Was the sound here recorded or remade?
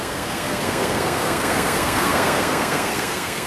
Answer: remade